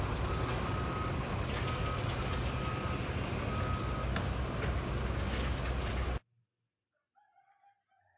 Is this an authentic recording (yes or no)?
yes